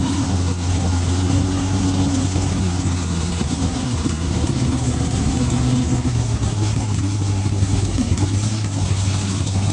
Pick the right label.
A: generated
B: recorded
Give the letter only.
A